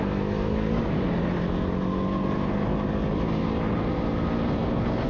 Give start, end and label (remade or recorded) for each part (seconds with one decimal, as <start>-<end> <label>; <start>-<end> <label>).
0.0-5.1 recorded